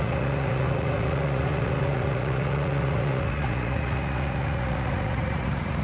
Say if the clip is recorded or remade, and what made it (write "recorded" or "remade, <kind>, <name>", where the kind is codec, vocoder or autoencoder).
remade, vocoder, Vocos